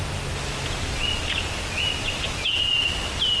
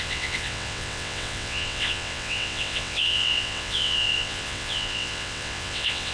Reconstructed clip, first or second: second